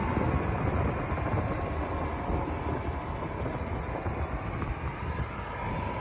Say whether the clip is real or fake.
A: real